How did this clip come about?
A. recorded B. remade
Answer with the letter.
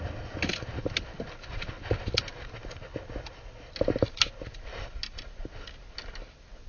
A